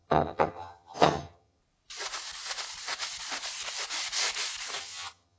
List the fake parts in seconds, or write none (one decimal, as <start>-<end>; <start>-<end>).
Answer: 0.0-1.6; 4.8-5.4